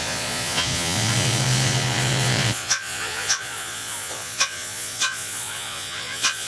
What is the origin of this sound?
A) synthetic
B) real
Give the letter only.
A